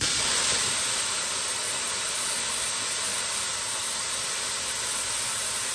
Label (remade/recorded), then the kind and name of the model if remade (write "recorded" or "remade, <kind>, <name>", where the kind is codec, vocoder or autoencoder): recorded